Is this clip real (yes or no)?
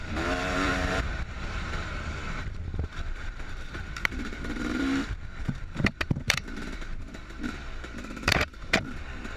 no